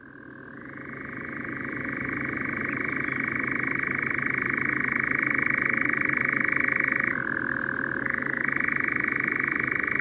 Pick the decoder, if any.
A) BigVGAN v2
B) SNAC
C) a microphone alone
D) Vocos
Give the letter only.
C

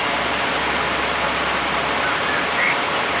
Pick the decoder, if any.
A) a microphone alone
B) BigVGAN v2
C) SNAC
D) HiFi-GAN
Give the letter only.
A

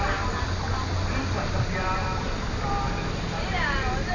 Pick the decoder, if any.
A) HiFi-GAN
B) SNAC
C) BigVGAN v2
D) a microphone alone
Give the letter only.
D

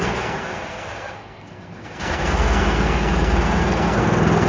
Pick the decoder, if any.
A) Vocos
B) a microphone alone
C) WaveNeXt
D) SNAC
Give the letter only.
D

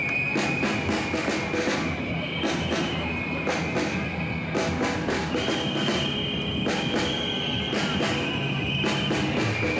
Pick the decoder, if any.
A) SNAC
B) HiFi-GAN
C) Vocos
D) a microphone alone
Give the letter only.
D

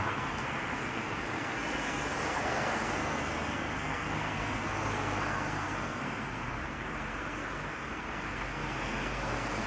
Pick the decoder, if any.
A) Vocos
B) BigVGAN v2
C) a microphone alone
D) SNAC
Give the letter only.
D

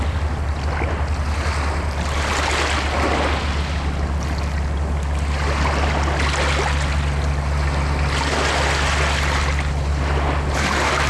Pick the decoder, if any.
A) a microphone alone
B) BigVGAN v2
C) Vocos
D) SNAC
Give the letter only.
A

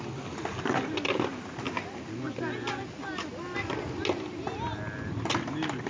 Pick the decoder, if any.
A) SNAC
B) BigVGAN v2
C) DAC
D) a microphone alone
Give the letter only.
D